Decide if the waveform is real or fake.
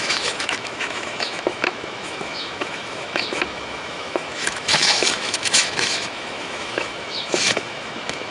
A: fake